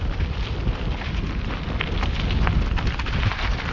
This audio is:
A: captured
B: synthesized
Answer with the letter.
A